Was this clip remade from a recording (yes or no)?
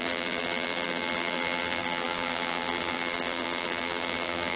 yes